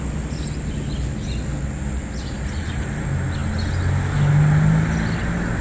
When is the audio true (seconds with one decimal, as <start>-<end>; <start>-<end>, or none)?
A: 0.0-5.6